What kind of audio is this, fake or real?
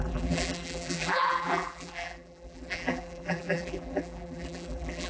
fake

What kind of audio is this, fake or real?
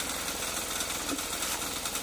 real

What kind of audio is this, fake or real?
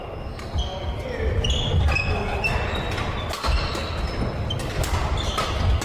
real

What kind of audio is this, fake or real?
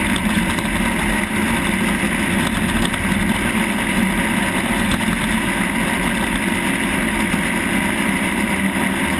real